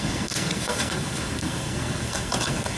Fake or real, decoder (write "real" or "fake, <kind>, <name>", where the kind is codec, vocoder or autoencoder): fake, codec, SNAC